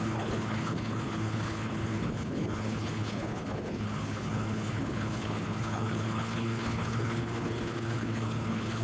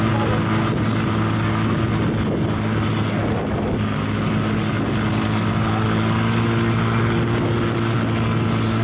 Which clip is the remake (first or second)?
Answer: first